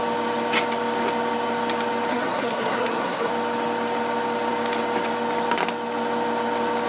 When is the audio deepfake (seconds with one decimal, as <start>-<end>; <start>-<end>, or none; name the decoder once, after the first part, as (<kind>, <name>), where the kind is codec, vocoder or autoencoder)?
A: 2.1-3.3 (codec, SNAC)